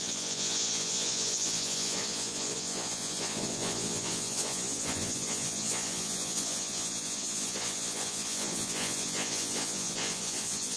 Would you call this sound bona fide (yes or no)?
no